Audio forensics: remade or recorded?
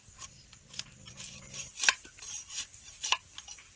remade